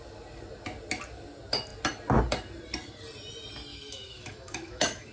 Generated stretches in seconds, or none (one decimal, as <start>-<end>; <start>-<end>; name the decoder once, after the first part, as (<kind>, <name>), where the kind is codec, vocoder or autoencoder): 3.7-5.1 (autoencoder, DAC-VAE)